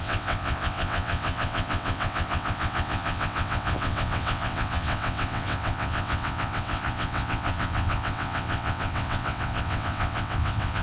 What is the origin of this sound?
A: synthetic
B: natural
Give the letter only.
A